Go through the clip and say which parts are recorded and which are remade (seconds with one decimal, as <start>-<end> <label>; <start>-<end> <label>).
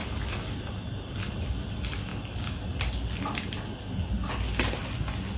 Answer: 0.0-5.4 recorded